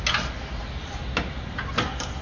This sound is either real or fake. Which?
real